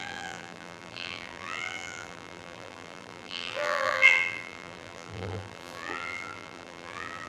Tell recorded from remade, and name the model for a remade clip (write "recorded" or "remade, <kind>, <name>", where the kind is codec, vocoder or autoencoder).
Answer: remade, vocoder, BigVGAN v2